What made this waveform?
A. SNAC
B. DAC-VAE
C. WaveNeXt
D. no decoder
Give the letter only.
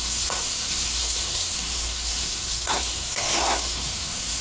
A